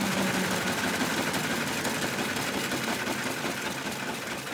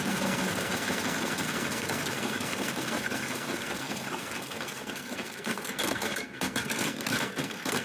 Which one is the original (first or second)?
first